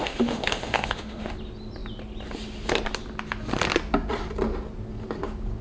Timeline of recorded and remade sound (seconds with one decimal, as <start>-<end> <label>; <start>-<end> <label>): 0.0-1.3 remade; 1.3-5.6 recorded